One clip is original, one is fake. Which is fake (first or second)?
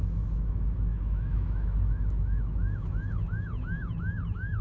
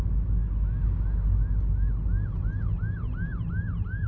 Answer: first